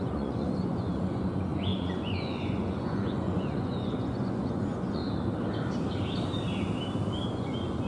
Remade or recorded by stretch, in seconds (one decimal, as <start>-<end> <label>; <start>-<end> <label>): 0.0-5.0 remade; 5.0-7.3 recorded; 7.3-7.9 remade